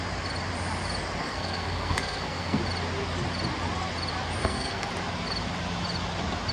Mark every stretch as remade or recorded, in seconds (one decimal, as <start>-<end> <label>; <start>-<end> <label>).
0.0-1.2 recorded; 1.2-2.6 remade; 2.6-4.4 recorded; 4.4-4.9 remade; 4.9-6.5 recorded